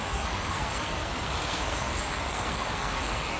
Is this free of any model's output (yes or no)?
no